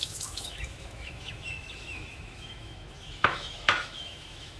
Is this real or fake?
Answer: fake